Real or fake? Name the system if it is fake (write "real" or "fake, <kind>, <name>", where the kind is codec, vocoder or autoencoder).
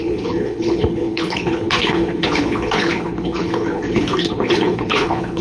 fake, codec, HILCodec